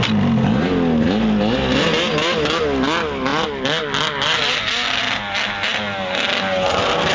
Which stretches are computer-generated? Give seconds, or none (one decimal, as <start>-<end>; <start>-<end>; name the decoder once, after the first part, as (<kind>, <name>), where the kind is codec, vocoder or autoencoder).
none